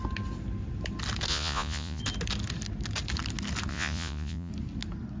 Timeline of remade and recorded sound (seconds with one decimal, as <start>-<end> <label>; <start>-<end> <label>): 0.0-1.3 recorded; 1.3-2.0 remade; 2.0-3.7 recorded; 3.7-4.5 remade; 4.5-5.2 recorded